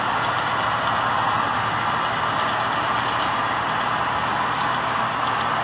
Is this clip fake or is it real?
real